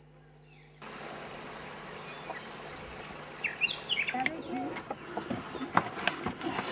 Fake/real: real